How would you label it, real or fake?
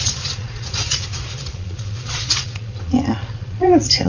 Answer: fake